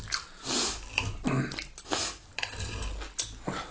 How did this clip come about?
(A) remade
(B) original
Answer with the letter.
B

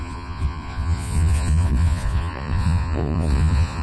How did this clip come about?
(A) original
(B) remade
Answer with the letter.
B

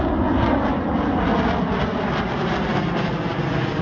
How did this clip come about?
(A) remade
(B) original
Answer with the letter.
B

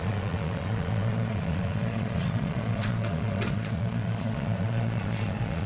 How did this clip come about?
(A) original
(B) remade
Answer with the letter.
B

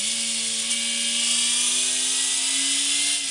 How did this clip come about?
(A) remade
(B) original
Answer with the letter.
B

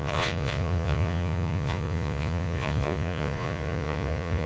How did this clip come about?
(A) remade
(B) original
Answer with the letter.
A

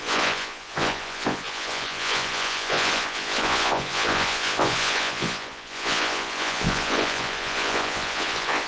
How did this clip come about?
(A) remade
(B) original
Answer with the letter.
A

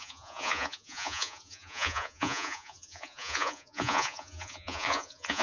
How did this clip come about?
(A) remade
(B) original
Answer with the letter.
A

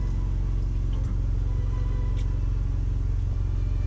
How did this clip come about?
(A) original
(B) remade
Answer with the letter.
A